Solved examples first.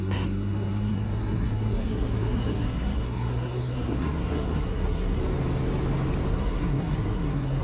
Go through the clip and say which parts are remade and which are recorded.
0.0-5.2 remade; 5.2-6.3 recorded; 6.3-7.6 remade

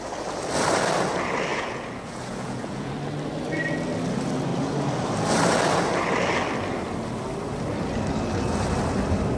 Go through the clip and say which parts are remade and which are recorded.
0.0-1.5 recorded; 1.5-2.9 remade; 2.9-9.4 recorded

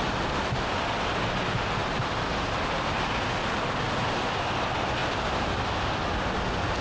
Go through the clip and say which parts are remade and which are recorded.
0.0-5.0 recorded; 5.0-5.5 remade; 5.5-6.8 recorded

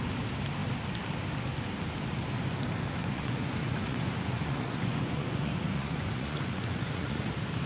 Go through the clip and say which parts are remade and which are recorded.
0.0-3.0 recorded; 3.0-7.3 remade; 7.3-7.7 recorded

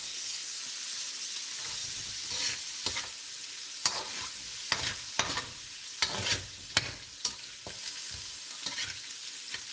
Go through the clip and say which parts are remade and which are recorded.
0.0-0.6 remade; 0.6-9.7 recorded

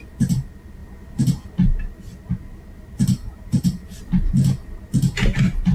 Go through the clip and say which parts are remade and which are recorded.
0.0-3.1 recorded; 3.1-4.0 remade; 4.0-5.7 recorded